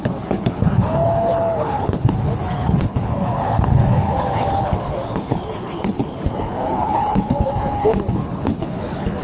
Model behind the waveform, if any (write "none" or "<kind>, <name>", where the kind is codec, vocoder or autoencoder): codec, HILCodec